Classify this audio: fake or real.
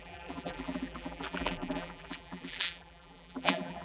fake